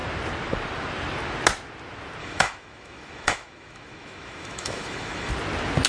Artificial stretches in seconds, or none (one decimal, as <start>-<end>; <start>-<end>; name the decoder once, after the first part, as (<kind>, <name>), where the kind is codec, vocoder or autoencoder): 2.2-5.3 (autoencoder, DAC-VAE)